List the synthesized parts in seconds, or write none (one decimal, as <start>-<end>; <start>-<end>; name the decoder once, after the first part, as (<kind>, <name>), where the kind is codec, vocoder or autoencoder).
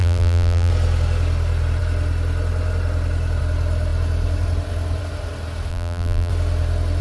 0.0-0.7 (vocoder, BigVGAN v2); 5.7-6.3